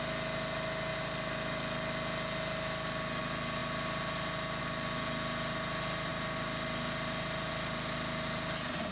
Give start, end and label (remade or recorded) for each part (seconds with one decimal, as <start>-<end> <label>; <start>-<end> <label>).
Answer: 0.0-8.9 recorded